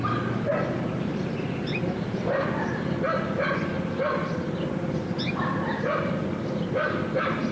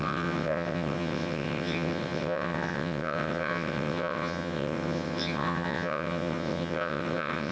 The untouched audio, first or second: first